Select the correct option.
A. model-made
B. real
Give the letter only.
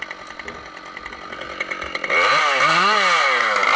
B